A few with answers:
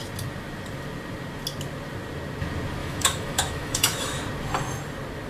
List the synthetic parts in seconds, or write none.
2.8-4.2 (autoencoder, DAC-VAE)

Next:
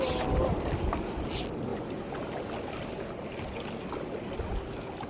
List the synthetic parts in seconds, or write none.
none